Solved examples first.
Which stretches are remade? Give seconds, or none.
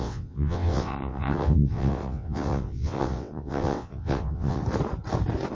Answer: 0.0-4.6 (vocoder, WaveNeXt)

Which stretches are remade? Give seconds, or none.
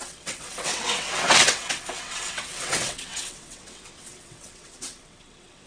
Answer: 0.0-5.7 (vocoder, WaveNeXt)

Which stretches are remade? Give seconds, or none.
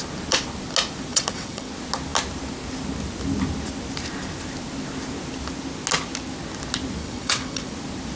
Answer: 1.1-1.7 (vocoder, WaveNeXt); 7.0-7.7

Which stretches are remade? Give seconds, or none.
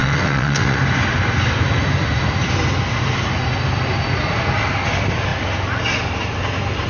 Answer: 0.0-0.8 (vocoder, WaveNeXt)